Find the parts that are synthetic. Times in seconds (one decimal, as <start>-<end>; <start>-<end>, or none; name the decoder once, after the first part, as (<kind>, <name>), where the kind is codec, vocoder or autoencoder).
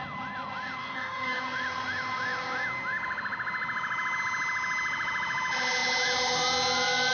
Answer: 0.8-1.4 (codec, DAC)